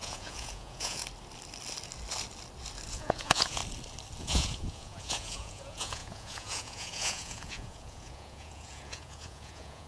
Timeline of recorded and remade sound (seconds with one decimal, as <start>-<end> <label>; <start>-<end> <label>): 0.0-1.0 remade; 1.0-2.9 recorded; 2.9-3.6 remade; 3.6-4.2 recorded; 4.2-9.9 remade